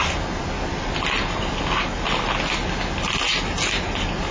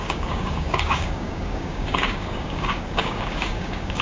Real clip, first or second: first